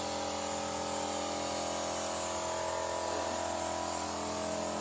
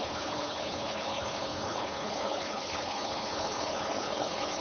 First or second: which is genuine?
first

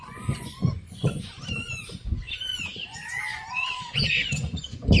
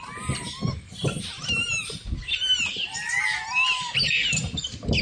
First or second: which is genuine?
second